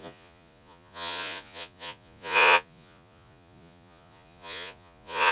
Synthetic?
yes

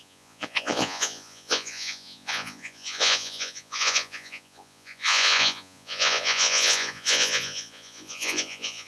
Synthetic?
yes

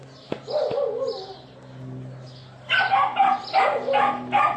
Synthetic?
no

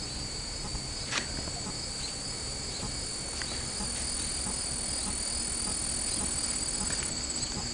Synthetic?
no